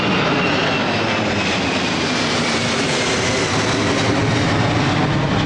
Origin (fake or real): real